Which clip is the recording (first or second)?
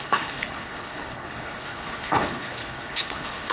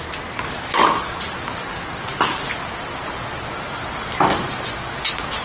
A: second